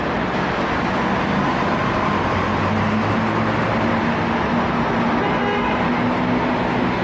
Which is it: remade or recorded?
recorded